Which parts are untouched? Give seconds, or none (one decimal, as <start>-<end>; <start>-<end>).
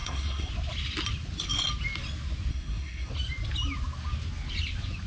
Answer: 0.5-2.5; 3.1-5.1